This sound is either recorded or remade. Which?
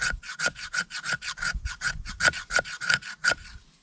recorded